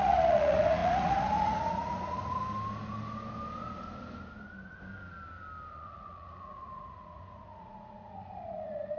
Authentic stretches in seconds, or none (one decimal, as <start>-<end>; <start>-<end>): 2.4-5.7